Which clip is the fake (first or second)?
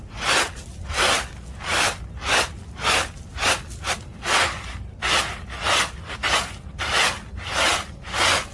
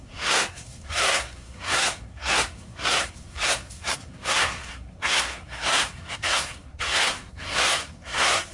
second